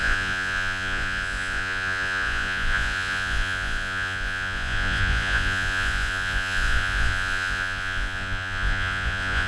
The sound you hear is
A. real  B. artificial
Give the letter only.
B